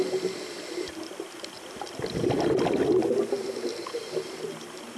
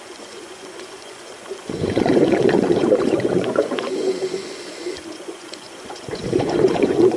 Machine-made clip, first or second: second